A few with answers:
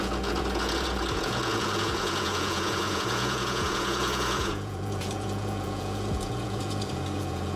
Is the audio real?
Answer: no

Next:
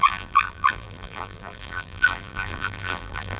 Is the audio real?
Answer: no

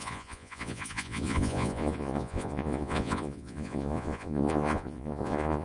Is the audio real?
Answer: no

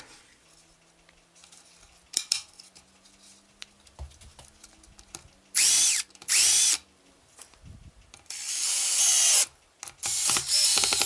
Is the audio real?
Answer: yes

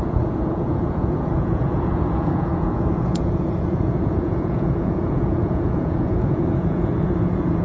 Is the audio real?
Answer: no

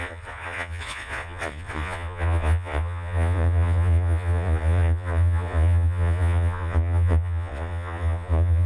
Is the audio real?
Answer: no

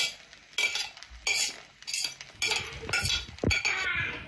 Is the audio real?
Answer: yes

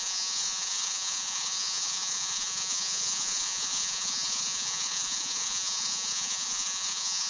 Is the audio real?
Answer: no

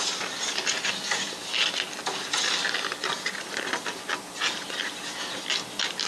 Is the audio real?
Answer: yes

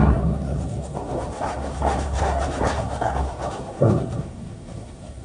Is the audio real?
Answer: no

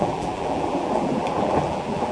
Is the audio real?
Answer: no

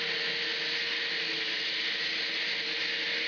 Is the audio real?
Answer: yes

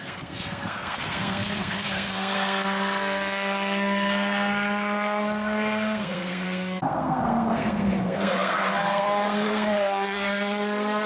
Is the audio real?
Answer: no